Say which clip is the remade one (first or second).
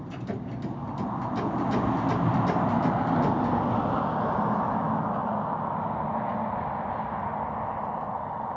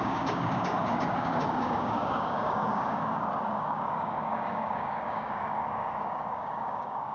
second